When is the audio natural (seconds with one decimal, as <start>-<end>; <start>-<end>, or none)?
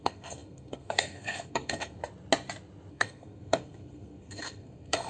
2.0-2.9